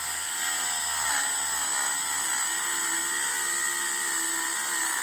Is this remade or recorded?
recorded